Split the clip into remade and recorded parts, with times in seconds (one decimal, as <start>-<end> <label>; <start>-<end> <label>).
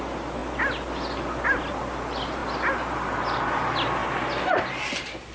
0.0-5.3 recorded